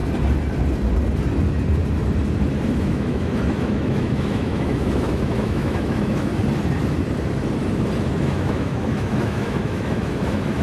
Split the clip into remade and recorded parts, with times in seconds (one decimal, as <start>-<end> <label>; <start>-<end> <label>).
0.0-2.8 recorded; 2.8-6.3 remade; 6.3-8.2 recorded; 8.2-10.6 remade